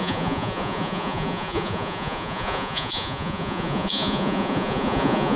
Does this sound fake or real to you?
fake